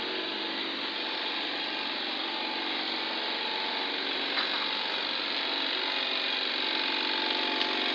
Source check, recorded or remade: recorded